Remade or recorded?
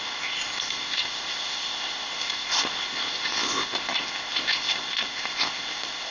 remade